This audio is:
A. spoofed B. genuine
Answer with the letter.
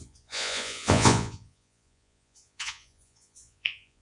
A